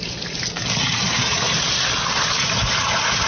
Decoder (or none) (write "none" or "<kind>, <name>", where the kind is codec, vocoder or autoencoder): vocoder, BigVGAN v2